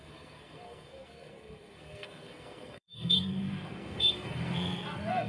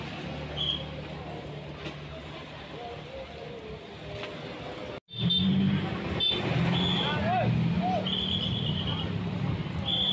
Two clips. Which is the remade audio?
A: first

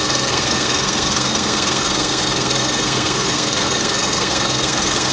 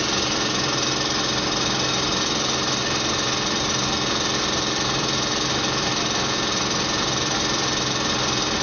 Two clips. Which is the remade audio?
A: first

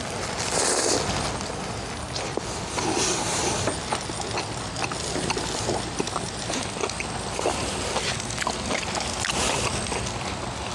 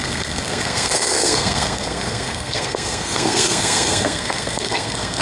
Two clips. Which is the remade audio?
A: second